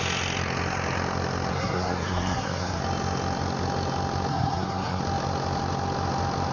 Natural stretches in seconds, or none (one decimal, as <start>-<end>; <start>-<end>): 0.0-1.5; 2.8-4.3; 5.0-6.5